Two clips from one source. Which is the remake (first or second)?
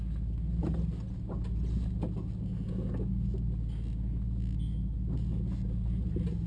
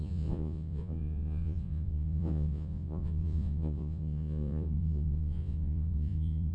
second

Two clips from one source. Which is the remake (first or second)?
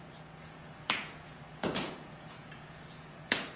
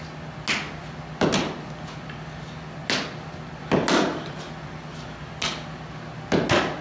first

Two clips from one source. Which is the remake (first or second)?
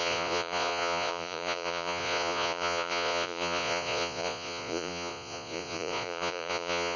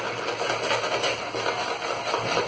first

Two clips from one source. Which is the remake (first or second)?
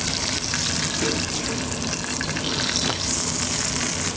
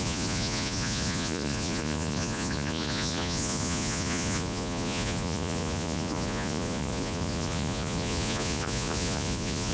second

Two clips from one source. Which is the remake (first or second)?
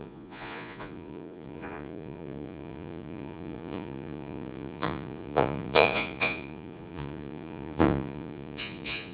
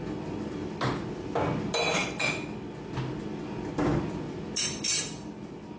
first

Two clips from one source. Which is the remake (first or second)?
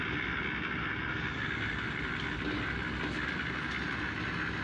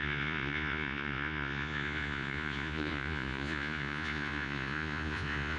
second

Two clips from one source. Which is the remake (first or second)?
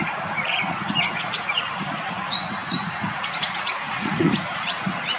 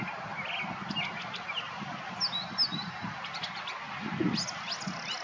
first